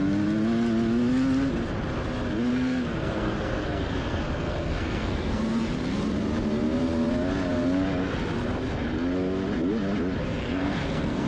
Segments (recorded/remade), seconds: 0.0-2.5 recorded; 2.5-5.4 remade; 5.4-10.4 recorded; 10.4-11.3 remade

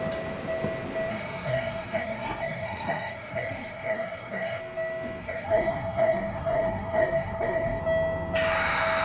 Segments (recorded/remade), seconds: 0.0-1.1 recorded; 1.1-4.6 remade; 4.6-5.2 recorded; 5.2-7.8 remade; 7.8-9.0 recorded

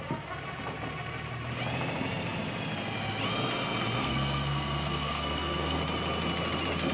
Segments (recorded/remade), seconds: 0.0-4.0 recorded; 4.0-5.8 remade; 5.8-6.9 recorded

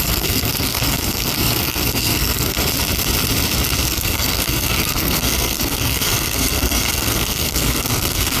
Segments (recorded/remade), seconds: 0.0-2.6 remade; 2.6-3.9 recorded; 3.9-8.4 remade

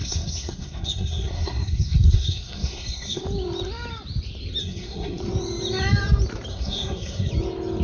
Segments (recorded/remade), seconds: 0.0-3.2 remade; 3.2-4.6 recorded; 4.6-5.2 remade; 5.2-6.5 recorded; 6.5-7.3 remade; 7.3-7.8 recorded

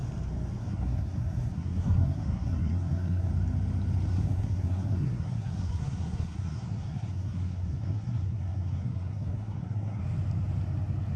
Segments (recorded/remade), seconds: 0.0-0.6 recorded; 0.6-3.3 remade; 3.3-4.1 recorded; 4.1-10.0 remade; 10.0-11.2 recorded